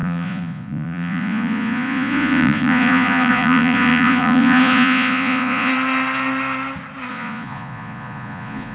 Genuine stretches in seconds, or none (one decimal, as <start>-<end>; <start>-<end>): 5.7-7.1